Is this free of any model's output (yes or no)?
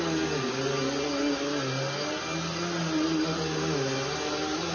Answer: yes